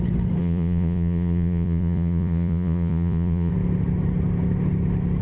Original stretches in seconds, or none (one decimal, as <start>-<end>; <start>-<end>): 0.0-0.4; 3.5-5.2